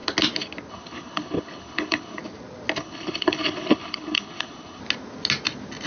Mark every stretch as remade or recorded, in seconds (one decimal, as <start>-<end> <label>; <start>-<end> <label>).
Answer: 0.0-0.7 recorded; 0.7-2.2 remade; 2.2-2.8 recorded; 2.8-4.8 remade; 4.8-5.9 recorded